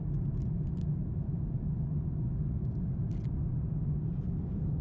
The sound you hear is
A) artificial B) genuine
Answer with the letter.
B